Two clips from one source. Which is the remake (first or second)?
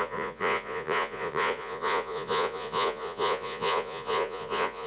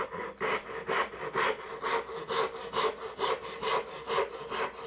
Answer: first